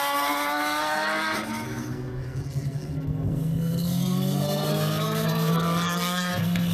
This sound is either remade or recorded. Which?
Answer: remade